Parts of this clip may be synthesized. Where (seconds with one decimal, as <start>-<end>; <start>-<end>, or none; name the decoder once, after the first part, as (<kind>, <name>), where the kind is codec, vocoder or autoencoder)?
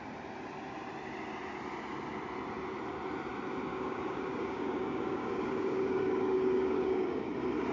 3.7-7.3 (codec, DAC)